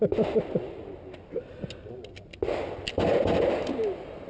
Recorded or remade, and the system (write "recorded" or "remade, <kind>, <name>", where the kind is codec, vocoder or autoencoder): recorded